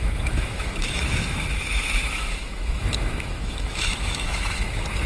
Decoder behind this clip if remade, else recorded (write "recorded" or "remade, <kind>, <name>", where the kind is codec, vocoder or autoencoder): remade, autoencoder, DAC-VAE